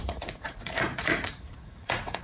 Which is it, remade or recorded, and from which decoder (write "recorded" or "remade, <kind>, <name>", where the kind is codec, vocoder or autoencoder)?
remade, vocoder, Vocos